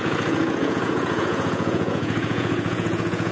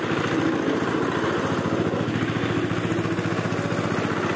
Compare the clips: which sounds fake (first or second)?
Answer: first